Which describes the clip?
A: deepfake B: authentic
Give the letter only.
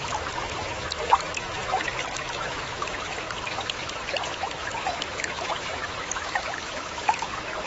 A